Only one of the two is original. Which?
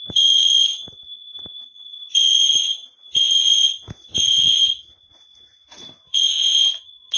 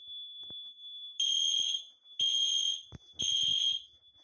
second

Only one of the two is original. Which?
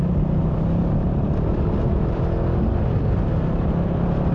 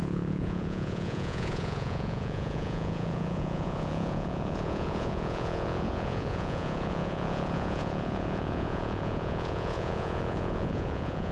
first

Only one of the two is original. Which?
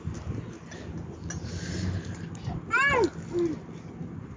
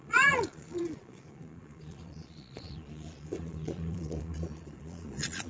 first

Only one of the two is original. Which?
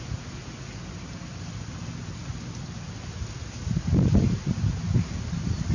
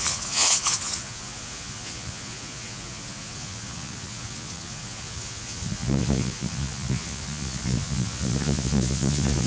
first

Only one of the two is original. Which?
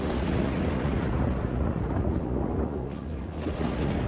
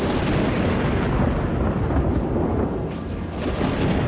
second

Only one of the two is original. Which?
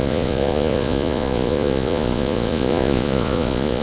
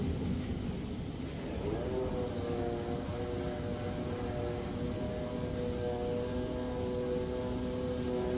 second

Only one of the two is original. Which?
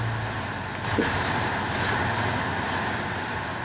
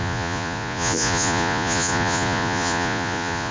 first